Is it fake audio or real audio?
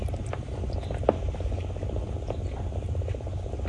real